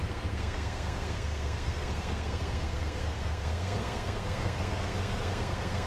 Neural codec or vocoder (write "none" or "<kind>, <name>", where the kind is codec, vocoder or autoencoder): codec, SNAC